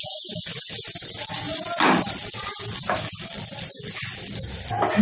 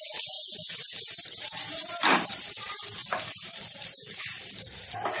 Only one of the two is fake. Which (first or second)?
second